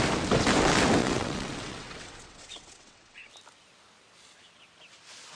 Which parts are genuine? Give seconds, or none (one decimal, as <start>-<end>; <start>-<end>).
0.0-1.0; 3.3-5.3